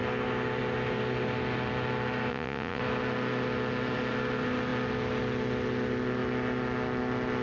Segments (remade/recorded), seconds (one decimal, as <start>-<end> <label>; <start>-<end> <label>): 0.0-2.3 recorded; 2.3-2.8 remade; 2.8-7.4 recorded